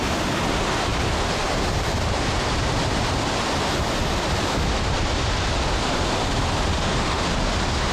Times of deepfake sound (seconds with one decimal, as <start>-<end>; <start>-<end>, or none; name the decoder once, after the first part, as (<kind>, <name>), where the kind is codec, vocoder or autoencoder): 6.7-7.3 (autoencoder, DAC-VAE)